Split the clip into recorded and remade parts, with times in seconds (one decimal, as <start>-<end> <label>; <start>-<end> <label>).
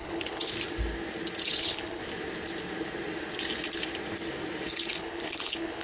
0.0-0.5 remade; 0.5-1.6 recorded; 1.6-2.0 remade; 2.0-4.9 recorded; 4.9-5.8 remade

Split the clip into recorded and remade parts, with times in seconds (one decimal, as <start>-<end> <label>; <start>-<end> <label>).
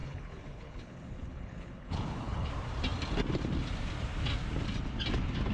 0.0-2.5 remade; 2.5-5.5 recorded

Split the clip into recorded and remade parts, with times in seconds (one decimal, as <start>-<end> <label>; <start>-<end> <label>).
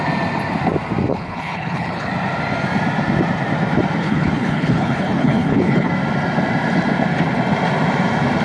0.0-1.1 recorded; 1.1-2.1 remade; 2.1-4.0 recorded; 4.0-5.9 remade; 5.9-8.4 recorded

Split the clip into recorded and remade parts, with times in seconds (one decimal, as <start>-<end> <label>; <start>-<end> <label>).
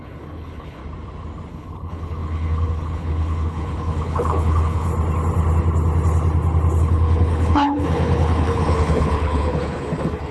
0.0-0.8 remade; 0.8-1.5 recorded; 1.5-4.9 remade; 4.9-6.8 recorded; 6.8-10.3 remade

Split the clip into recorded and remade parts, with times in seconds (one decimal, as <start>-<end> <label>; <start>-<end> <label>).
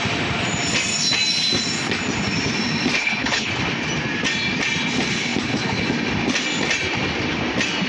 0.0-3.0 recorded; 3.0-3.5 remade; 3.5-7.9 recorded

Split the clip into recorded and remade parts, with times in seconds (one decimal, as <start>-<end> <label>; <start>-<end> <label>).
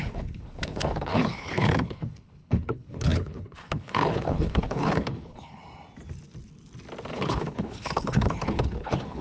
0.0-5.6 remade; 5.6-7.1 recorded; 7.1-9.2 remade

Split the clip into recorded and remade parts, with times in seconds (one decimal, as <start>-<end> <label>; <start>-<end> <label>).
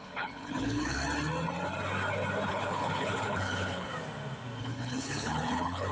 0.0-1.0 remade; 1.0-2.5 recorded; 2.5-3.9 remade; 3.9-4.6 recorded; 4.6-5.9 remade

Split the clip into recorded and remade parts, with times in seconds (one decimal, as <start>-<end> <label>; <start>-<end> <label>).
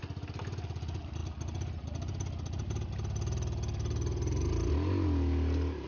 0.0-5.9 recorded